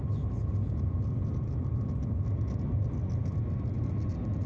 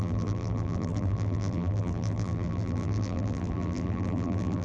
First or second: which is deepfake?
second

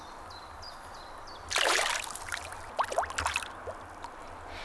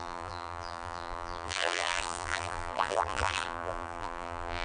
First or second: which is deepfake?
second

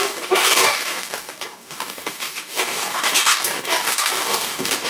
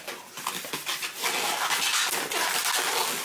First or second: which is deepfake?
first